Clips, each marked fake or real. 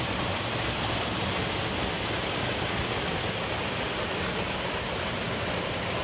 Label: real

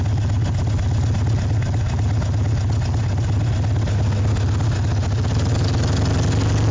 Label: real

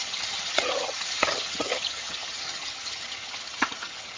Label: fake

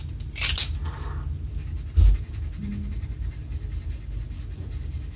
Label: real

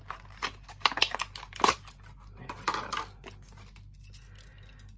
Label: real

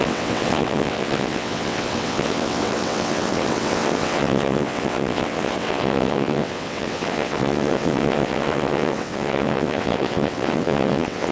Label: fake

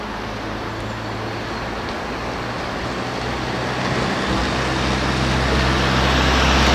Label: real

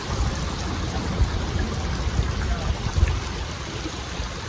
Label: real